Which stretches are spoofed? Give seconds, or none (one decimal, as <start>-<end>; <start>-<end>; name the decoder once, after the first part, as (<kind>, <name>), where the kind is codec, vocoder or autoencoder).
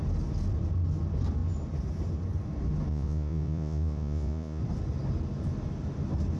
2.9-4.6 (vocoder, Vocos)